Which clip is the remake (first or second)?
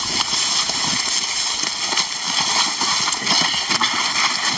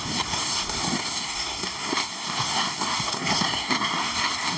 second